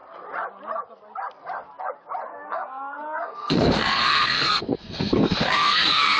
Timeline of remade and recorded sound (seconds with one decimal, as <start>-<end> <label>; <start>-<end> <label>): 0.0-2.3 recorded; 2.3-6.2 remade